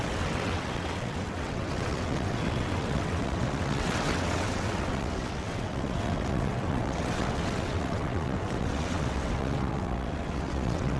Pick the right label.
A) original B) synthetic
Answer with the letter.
B